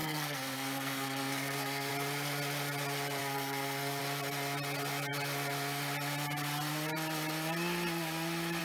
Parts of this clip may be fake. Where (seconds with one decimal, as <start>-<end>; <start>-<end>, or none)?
0.0-1.9; 3.2-4.0